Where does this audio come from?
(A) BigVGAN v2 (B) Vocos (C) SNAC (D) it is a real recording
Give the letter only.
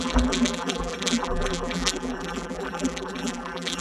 A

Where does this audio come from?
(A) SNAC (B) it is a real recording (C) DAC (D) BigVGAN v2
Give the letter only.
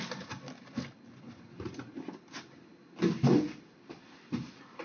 B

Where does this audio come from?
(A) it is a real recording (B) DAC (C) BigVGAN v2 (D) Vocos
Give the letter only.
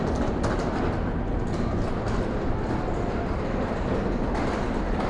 A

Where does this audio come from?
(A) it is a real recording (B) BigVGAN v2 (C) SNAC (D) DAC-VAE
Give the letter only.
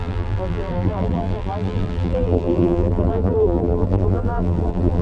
B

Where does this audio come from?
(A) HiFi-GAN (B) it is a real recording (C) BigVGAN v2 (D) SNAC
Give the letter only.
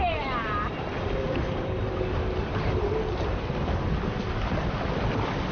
C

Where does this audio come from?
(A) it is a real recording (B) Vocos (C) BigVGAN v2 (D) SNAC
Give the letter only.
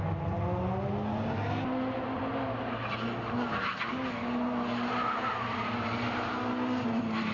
A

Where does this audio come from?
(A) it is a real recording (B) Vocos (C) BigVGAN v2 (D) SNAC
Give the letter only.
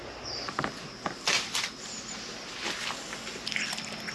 A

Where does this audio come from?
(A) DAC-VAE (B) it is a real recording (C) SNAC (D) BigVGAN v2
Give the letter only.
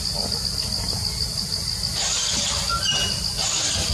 B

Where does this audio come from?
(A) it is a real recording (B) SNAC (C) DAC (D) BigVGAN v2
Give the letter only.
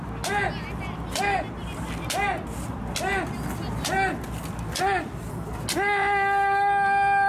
A